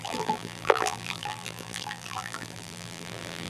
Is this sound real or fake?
fake